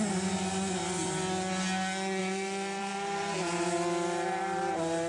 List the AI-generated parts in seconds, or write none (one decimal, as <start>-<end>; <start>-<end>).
2.2-5.1